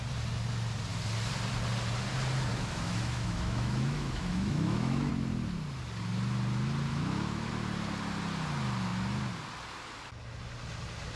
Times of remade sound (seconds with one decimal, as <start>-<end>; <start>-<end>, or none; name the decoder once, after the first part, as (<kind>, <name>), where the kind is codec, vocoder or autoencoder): 2.5-5.1 (autoencoder, DAC-VAE); 6.9-7.5